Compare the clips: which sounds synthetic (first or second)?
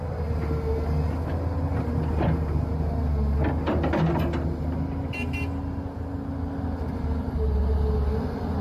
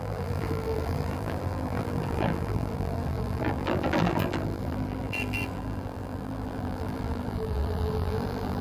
second